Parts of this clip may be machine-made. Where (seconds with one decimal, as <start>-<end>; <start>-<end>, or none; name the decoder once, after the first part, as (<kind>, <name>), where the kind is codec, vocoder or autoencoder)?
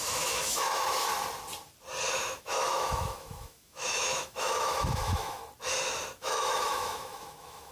0.0-1.1 (autoencoder, DAC-VAE); 2.1-5.4; 6.2-7.7